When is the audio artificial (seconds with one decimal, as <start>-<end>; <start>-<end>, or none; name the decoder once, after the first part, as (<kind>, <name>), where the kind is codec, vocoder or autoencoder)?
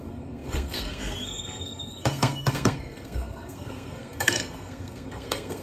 0.0-5.6 (codec, SNAC)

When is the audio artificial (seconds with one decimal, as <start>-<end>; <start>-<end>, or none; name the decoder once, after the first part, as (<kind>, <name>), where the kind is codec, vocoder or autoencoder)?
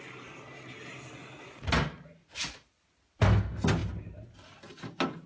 1.2-1.7 (vocoder, Vocos); 2.2-2.7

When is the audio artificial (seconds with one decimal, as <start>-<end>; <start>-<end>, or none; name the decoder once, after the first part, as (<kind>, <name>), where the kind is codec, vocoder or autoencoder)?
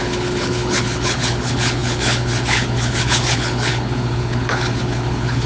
0.0-5.5 (codec, HILCodec)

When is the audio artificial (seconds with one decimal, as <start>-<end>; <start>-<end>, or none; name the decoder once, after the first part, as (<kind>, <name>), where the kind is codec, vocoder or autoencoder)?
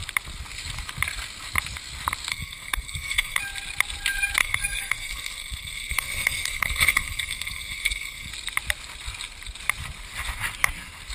2.3-3.4 (codec, SNAC); 4.4-8.3